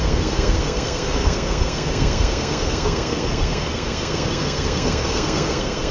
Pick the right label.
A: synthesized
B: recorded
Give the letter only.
A